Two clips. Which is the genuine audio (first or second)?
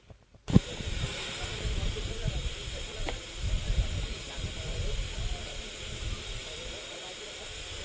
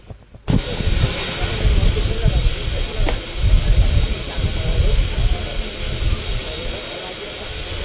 second